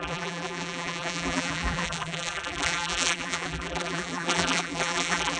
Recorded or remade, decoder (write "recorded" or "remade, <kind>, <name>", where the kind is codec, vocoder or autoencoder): remade, vocoder, BigVGAN v2